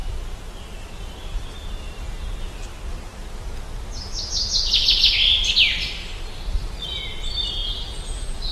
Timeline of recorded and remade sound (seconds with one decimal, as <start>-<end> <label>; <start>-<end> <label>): 0.0-7.6 recorded; 7.6-8.5 remade